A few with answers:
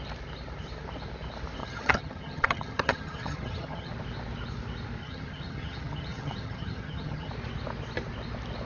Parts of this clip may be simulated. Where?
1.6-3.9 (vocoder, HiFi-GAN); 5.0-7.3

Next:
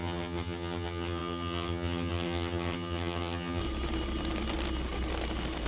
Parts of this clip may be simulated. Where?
0.0-3.6 (vocoder, HiFi-GAN)

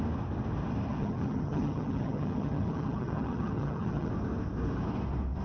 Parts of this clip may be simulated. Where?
0.9-4.1 (vocoder, HiFi-GAN)